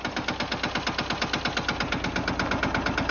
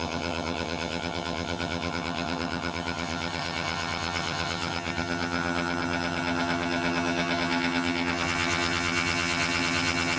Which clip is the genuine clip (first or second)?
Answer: first